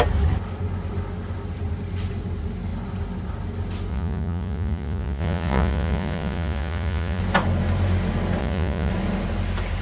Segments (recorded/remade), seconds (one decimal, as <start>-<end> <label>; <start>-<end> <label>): 0.0-3.9 recorded; 3.9-7.2 remade; 7.2-8.4 recorded; 8.4-8.9 remade; 8.9-9.8 recorded